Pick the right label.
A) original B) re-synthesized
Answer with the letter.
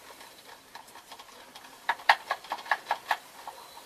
B